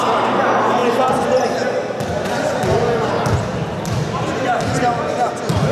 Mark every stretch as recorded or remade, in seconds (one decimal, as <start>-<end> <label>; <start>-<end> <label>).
0.0-5.7 recorded